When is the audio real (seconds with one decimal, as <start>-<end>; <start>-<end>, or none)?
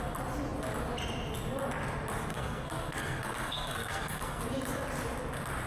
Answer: 0.0-2.3; 4.4-5.7